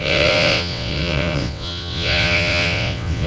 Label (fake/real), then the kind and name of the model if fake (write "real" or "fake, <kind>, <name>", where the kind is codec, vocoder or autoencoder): fake, vocoder, WaveNeXt